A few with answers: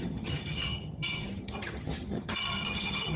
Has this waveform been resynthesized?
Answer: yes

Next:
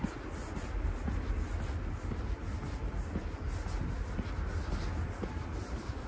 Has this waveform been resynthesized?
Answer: no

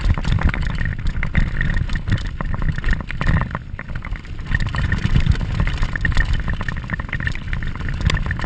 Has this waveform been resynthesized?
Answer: no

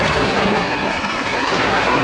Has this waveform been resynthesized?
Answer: yes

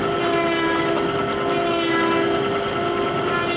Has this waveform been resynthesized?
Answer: no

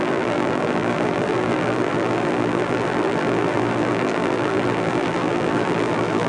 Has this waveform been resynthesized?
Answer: yes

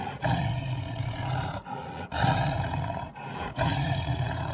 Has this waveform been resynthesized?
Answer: yes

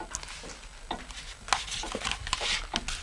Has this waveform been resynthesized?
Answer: no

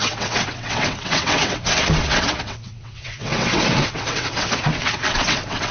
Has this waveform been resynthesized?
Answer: yes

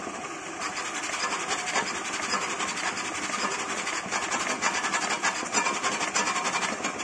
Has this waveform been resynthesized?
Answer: no